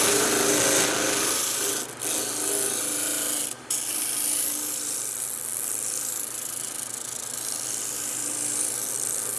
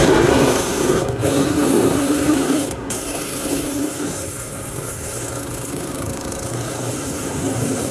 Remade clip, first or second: second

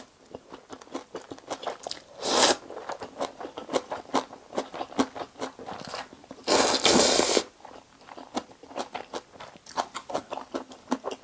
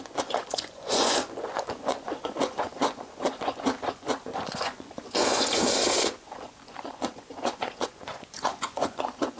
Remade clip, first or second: second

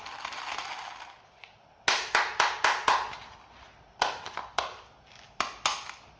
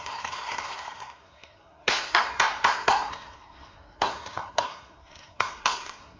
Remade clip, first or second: second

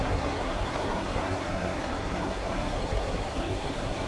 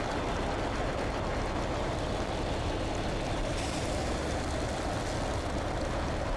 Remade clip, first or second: first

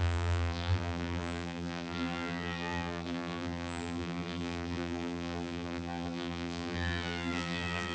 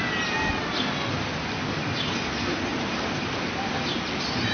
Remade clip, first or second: first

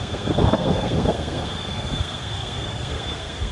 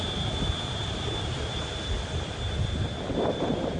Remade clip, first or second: first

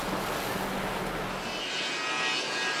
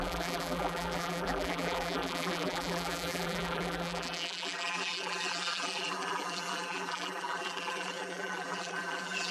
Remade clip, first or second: second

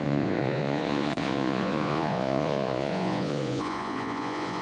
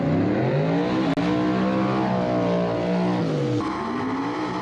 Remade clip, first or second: first